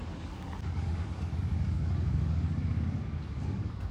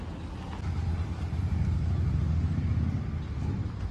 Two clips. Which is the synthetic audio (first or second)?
first